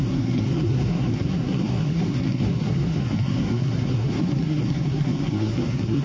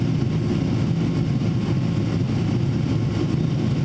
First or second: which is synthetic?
first